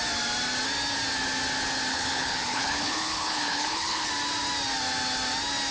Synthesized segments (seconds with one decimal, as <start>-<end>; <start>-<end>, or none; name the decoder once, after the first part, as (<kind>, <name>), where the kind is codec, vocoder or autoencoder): 1.9-4.1 (codec, HILCodec)